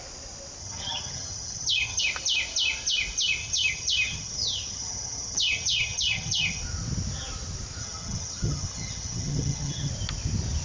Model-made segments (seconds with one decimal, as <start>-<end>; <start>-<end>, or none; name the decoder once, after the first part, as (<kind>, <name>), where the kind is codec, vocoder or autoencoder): 0.6-2.0 (vocoder, HiFi-GAN); 3.4-6.6; 7.8-9.9